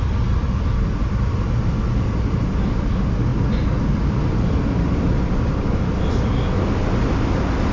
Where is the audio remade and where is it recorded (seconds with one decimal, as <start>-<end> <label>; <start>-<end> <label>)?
0.0-7.7 recorded